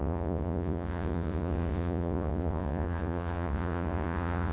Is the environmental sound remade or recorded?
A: remade